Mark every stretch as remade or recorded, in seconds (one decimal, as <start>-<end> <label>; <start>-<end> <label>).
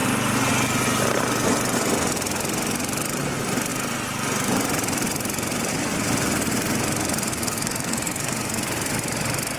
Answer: 0.0-7.3 recorded; 7.3-8.9 remade; 8.9-9.6 recorded